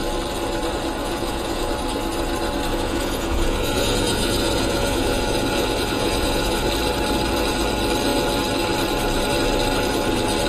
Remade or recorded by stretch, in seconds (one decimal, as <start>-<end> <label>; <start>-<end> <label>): 0.0-1.0 recorded; 1.0-1.7 remade; 1.7-2.7 recorded; 2.7-6.7 remade; 6.7-10.5 recorded